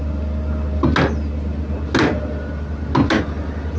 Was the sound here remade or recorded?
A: recorded